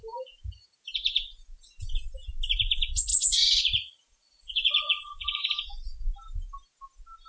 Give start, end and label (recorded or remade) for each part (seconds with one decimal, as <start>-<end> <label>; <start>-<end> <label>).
0.0-3.1 recorded; 3.1-5.4 remade; 5.4-7.3 recorded